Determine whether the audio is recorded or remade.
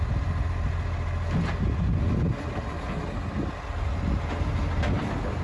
recorded